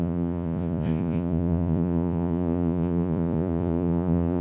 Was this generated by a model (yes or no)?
yes